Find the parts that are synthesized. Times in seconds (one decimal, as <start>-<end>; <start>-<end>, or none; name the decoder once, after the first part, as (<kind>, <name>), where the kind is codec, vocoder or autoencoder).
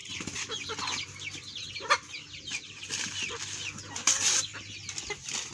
none